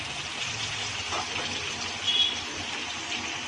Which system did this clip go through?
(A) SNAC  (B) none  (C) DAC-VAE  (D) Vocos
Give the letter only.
B